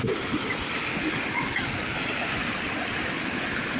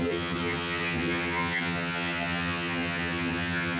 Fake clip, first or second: second